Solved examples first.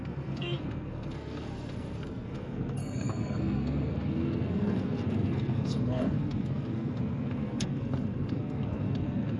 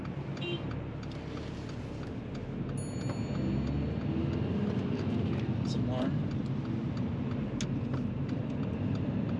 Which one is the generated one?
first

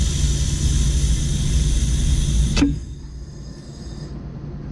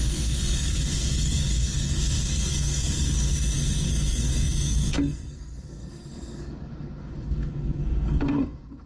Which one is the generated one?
second